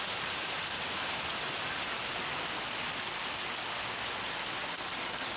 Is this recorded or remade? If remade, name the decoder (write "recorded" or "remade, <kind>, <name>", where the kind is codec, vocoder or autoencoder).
recorded